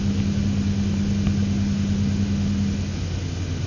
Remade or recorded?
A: recorded